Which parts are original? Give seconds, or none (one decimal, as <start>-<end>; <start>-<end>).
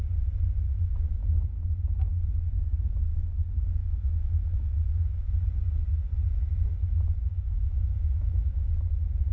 0.0-3.8; 5.3-7.3; 8.7-9.3